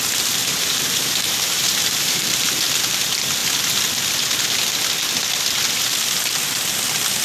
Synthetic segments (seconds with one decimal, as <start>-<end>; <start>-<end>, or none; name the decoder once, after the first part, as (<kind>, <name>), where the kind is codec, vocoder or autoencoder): 0.4-2.5 (vocoder, BigVGAN v2)